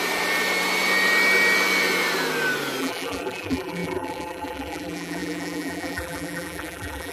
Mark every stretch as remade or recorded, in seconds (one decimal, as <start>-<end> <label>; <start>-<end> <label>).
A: 0.0-2.8 recorded; 2.8-7.1 remade